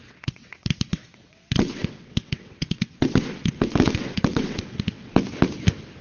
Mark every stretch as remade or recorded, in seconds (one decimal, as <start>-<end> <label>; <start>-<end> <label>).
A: 0.0-5.1 remade; 5.1-6.0 recorded